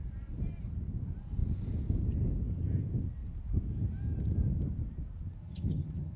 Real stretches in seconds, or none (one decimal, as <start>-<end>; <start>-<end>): 0.0-5.4